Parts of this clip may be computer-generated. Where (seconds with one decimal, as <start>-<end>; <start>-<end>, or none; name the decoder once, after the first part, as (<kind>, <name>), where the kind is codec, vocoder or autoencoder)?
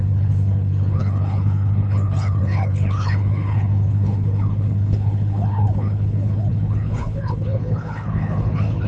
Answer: 0.0-8.9 (codec, HILCodec)